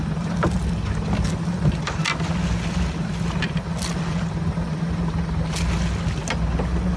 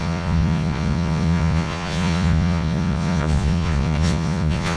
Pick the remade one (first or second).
second